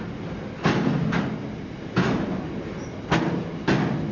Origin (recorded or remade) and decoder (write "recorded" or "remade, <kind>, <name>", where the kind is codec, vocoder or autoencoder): recorded